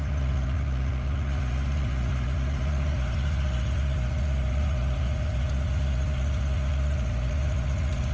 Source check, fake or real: fake